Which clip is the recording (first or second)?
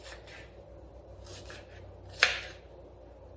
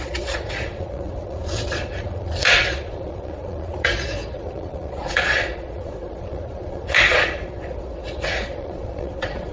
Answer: first